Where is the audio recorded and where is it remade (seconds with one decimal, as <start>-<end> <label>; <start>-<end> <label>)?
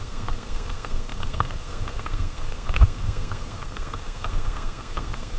0.0-5.4 remade